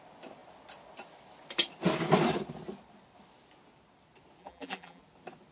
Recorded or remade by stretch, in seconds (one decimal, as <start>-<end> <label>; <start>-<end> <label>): 0.0-4.4 recorded; 4.4-5.0 remade; 5.0-5.5 recorded